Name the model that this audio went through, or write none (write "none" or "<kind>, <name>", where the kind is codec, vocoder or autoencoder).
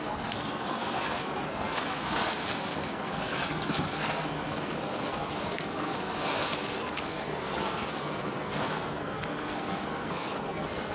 codec, SNAC